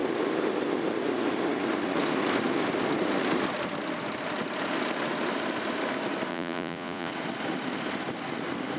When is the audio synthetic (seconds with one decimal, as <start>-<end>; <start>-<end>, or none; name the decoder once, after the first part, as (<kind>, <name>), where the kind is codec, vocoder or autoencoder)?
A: 6.3-7.1 (vocoder, Vocos)